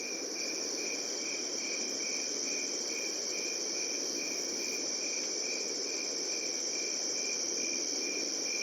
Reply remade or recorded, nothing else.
recorded